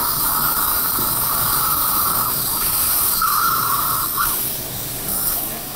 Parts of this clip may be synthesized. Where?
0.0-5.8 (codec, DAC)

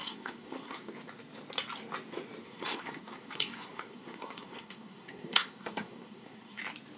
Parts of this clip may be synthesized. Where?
0.0-0.9 (codec, SNAC); 2.4-6.6